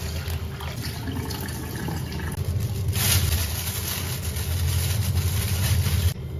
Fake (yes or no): no